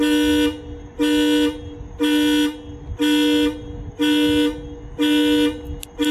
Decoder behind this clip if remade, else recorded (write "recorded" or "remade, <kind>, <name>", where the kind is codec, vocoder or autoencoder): recorded